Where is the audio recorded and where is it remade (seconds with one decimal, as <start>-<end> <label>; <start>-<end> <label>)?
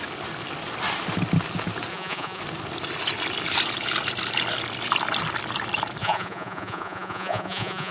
0.0-1.9 recorded; 1.9-2.4 remade; 2.4-6.0 recorded; 6.0-7.9 remade